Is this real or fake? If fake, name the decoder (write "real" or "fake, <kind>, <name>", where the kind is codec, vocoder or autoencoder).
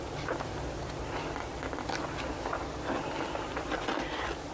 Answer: real